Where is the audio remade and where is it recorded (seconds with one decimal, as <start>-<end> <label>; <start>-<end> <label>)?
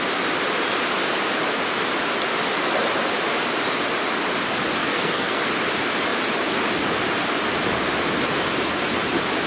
0.0-4.8 recorded; 4.8-5.5 remade; 5.5-9.5 recorded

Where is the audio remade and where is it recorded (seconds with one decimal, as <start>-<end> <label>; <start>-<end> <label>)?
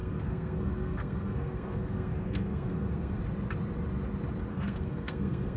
0.0-3.2 remade; 3.2-4.5 recorded; 4.5-5.6 remade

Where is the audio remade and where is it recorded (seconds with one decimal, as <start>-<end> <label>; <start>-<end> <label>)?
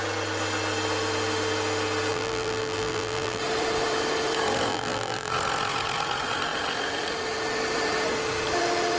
0.0-2.1 recorded; 2.1-3.4 remade; 3.4-4.7 recorded; 4.7-5.3 remade; 5.3-9.0 recorded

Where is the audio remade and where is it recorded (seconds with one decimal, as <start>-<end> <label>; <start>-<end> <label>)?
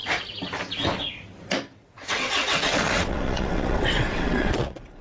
0.0-1.8 recorded; 1.8-5.0 remade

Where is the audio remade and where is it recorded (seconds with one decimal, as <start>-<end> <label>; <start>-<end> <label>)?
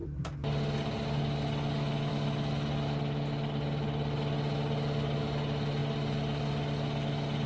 0.0-7.5 recorded